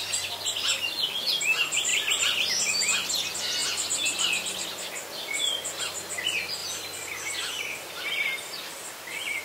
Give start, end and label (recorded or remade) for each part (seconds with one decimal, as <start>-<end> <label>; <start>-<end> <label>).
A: 0.0-1.9 recorded; 1.9-3.1 remade; 3.1-6.6 recorded; 6.6-7.3 remade; 7.3-9.4 recorded